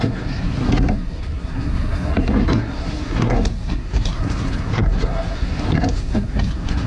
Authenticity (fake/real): fake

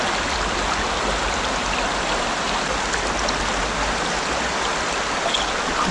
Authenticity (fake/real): real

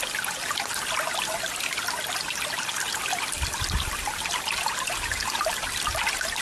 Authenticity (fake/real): real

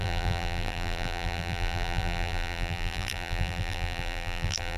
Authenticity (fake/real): fake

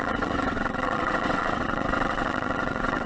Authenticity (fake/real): fake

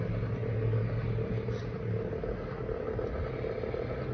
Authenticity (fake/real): real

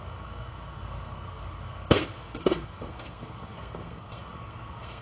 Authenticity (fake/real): fake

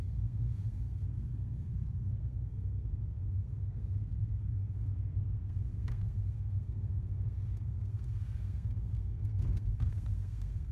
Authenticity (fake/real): fake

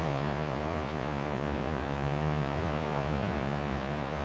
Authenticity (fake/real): fake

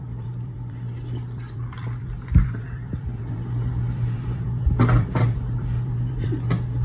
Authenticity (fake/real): fake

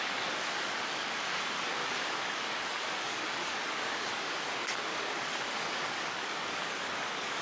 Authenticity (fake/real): fake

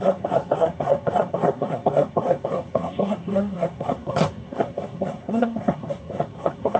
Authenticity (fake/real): fake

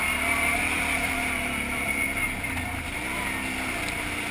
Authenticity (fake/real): real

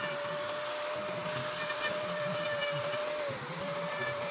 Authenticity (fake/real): fake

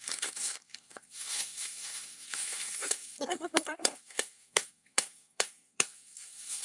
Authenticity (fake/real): fake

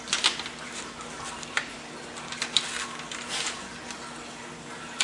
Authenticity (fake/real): real